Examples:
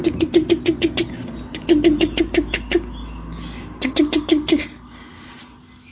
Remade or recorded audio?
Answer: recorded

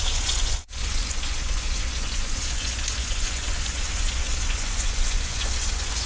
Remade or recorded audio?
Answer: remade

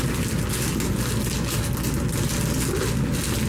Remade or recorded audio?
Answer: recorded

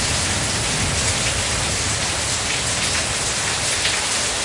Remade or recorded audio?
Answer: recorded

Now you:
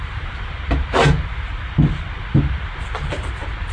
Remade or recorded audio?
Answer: recorded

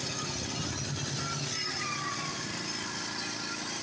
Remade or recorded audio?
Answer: recorded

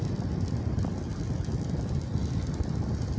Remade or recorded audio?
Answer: recorded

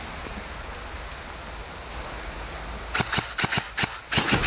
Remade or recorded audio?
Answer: recorded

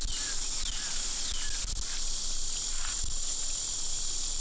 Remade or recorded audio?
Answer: recorded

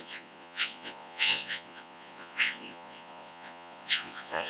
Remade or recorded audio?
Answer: remade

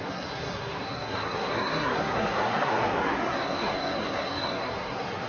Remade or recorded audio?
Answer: remade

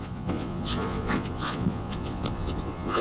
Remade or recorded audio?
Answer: remade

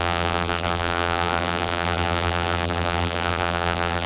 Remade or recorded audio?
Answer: remade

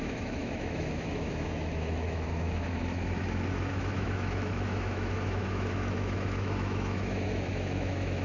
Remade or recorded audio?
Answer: remade